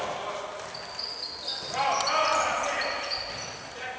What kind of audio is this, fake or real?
real